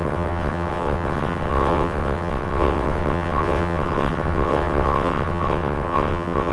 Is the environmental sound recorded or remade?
remade